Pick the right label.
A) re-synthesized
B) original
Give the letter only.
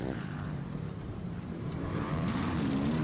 A